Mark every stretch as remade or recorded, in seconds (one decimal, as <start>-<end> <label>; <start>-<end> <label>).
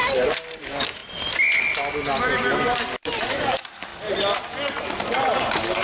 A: 0.0-1.0 remade; 1.0-2.5 recorded; 2.5-3.9 remade; 3.9-5.0 recorded; 5.0-5.8 remade